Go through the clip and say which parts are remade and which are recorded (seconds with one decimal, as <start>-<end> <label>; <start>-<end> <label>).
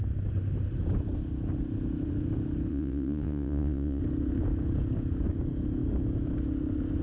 0.0-2.7 recorded; 2.7-4.0 remade; 4.0-7.0 recorded